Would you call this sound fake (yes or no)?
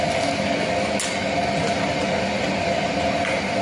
no